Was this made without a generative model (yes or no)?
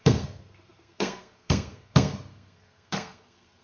no